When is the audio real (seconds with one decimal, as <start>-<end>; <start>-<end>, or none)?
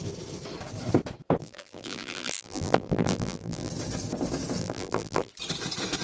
0.0-1.4; 3.7-4.6; 5.3-6.0